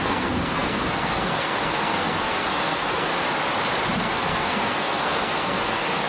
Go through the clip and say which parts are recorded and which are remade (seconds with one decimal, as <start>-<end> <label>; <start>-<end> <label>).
0.0-3.1 remade; 3.1-4.0 recorded; 4.0-6.1 remade